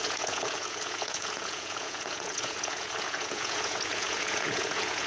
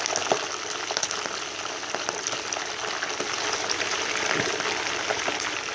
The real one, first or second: second